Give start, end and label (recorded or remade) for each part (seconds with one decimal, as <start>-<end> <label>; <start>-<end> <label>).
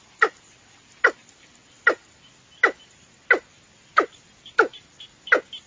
0.0-5.7 recorded